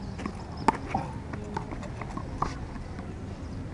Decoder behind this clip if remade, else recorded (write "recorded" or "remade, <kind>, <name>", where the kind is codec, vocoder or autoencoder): recorded